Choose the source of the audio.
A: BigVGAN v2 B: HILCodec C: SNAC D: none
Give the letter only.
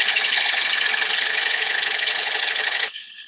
B